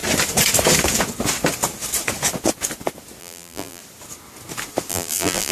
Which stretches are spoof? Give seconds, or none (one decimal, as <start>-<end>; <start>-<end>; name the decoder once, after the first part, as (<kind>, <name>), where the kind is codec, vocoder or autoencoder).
3.2-3.8 (vocoder, BigVGAN v2); 4.9-5.5